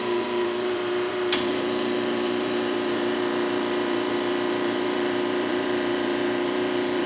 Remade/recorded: remade